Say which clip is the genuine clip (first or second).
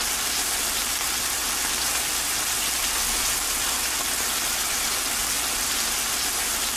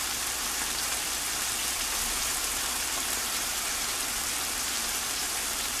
first